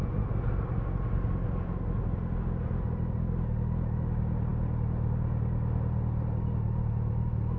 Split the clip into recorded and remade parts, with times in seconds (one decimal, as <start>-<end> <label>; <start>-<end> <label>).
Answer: 0.0-7.6 recorded